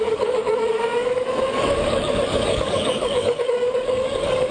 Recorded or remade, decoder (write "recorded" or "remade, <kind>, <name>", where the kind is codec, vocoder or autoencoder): remade, codec, DAC